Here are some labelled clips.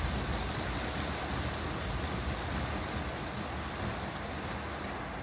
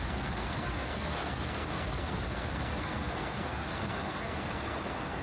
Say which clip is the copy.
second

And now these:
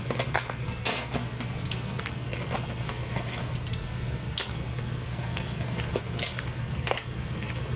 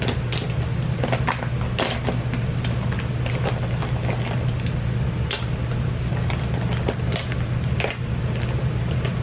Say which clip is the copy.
first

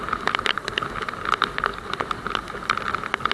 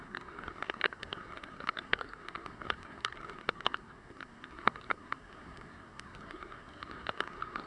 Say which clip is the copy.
second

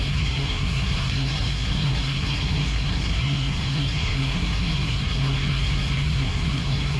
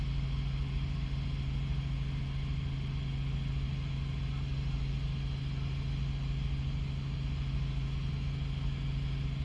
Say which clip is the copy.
first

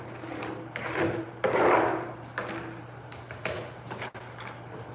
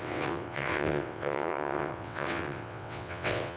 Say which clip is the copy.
second